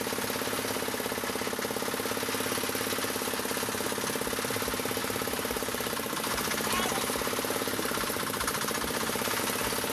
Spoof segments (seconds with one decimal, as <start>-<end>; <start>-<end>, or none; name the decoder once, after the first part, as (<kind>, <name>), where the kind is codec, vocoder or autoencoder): 5.0-9.4 (vocoder, BigVGAN v2)